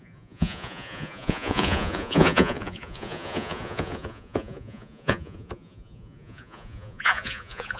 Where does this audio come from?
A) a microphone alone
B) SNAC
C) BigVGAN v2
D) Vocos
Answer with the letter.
D